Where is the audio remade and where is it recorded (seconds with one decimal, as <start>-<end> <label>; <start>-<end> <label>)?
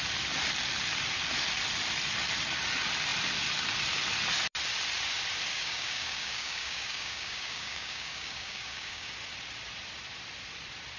0.0-5.5 recorded; 5.5-9.1 remade; 9.1-11.0 recorded